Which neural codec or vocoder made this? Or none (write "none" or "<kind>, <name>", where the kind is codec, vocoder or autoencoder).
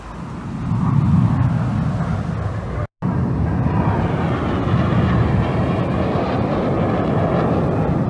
none